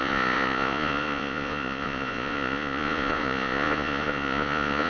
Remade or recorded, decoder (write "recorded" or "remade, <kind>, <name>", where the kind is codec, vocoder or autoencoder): remade, vocoder, Vocos